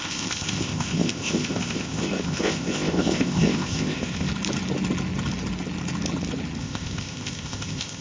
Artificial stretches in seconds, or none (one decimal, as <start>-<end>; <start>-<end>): 0.0-4.3; 6.6-8.0